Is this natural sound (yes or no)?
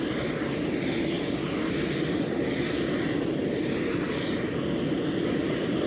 yes